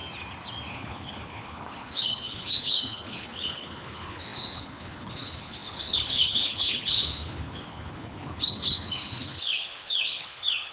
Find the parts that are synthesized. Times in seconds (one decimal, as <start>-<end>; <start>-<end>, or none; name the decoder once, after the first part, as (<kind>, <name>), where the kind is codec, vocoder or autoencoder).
0.7-10.7 (codec, HILCodec)